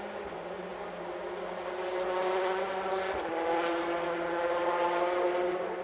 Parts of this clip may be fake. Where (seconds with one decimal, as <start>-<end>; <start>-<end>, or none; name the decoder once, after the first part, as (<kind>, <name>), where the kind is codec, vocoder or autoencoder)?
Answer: none